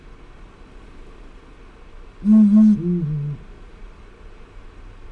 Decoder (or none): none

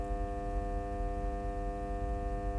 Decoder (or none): none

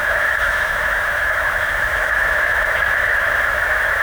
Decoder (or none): autoencoder, DAC-VAE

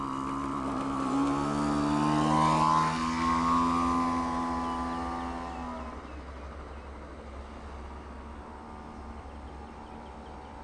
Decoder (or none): none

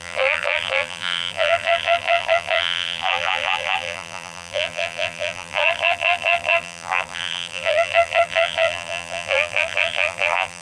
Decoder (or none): vocoder, BigVGAN v2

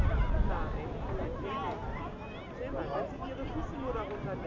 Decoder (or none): none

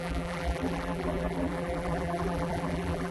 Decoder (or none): vocoder, BigVGAN v2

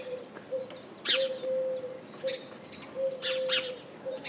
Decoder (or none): none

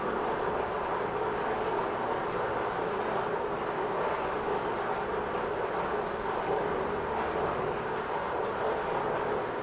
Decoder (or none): none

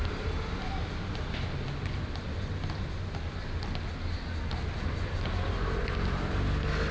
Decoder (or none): none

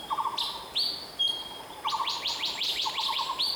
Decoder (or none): none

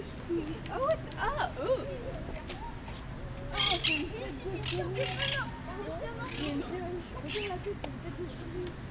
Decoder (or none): none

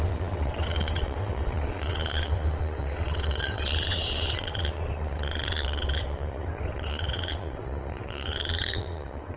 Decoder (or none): vocoder, WaveNeXt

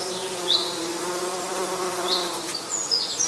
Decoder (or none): vocoder, Vocos